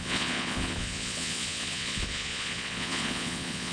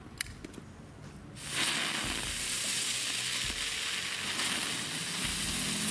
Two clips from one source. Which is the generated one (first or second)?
first